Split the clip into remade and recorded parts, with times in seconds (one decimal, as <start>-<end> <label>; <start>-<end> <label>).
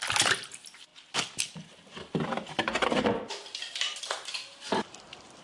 0.0-5.4 recorded